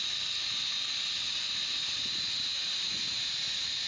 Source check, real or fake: real